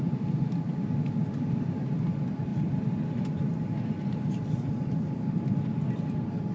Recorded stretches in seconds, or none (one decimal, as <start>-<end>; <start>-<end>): 0.0-6.5